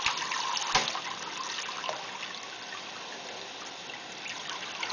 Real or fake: real